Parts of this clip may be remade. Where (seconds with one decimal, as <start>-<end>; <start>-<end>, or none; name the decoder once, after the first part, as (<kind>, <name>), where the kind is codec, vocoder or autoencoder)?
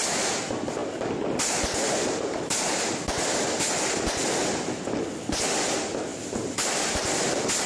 6.1-7.3 (vocoder, BigVGAN v2)